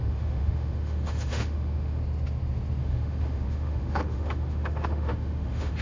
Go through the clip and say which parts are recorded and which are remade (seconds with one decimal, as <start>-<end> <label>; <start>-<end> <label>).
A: 0.0-2.0 remade; 2.0-2.8 recorded; 2.8-5.8 remade